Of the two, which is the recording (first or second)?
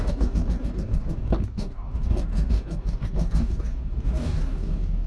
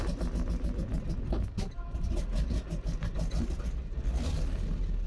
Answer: second